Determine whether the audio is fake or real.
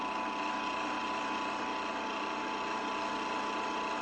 real